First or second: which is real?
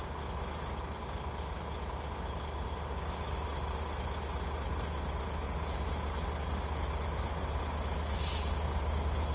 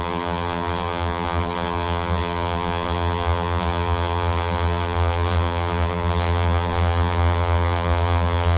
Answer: first